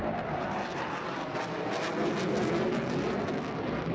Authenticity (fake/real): real